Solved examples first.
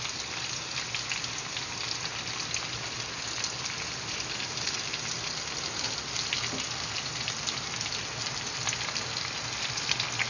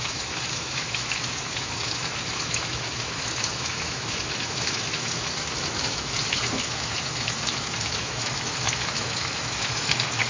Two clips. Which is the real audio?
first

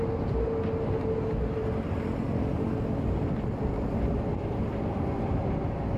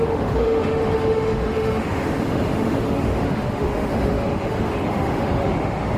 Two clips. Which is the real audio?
first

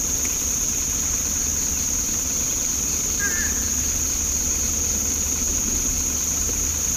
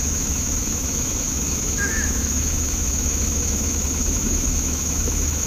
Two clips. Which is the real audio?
first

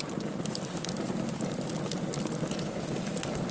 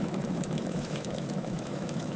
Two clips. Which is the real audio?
first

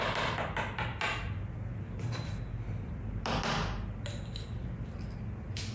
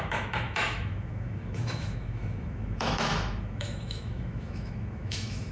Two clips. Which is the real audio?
first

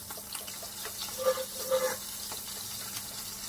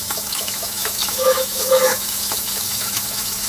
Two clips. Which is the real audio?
first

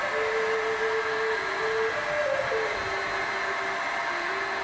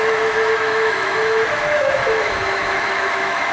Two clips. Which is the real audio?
first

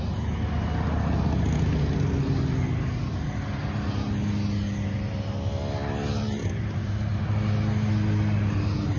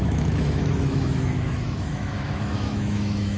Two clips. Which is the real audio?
first